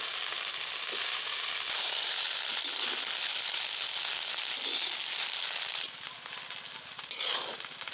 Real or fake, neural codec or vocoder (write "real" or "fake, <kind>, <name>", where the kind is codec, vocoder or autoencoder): real